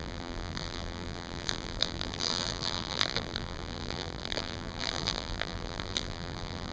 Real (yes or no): no